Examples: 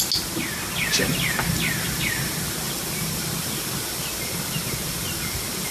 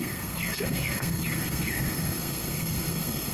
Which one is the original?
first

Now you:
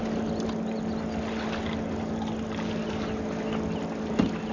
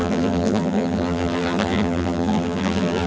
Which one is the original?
first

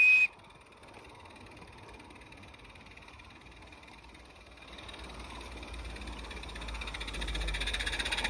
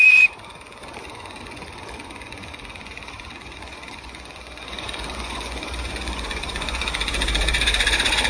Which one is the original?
first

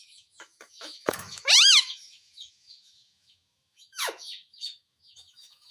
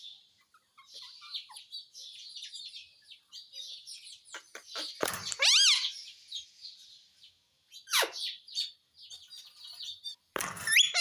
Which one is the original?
second